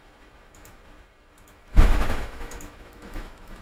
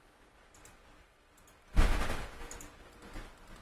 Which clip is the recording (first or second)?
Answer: second